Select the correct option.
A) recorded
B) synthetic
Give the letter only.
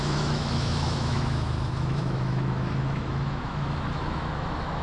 B